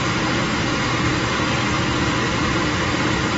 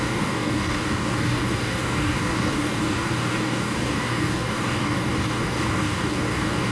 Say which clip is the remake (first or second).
second